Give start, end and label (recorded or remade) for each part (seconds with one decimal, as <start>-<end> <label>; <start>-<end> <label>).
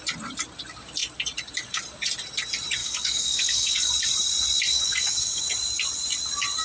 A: 0.0-2.8 recorded; 2.8-3.9 remade; 3.9-4.7 recorded; 4.7-5.4 remade; 5.4-6.6 recorded